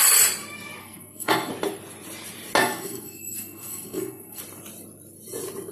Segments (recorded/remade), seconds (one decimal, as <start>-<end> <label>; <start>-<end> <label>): 0.0-0.8 recorded; 0.8-1.5 remade; 1.5-2.6 recorded; 2.6-4.4 remade; 4.4-5.7 recorded